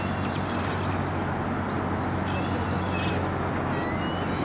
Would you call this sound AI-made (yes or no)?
no